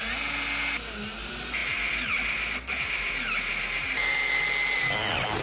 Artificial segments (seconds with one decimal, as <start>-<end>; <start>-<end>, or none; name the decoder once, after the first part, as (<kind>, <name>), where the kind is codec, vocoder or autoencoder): none